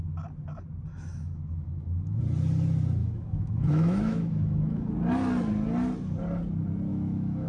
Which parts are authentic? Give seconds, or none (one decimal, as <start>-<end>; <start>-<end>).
0.0-0.9; 2.2-3.0; 4.9-6.9